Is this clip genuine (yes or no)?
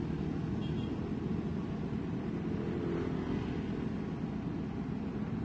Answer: yes